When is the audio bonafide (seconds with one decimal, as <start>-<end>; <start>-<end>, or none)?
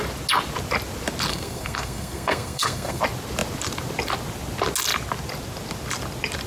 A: 0.0-1.3; 3.0-6.5